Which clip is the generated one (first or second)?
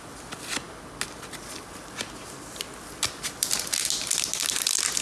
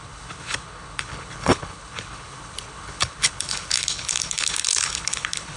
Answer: second